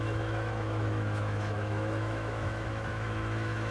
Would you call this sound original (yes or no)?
no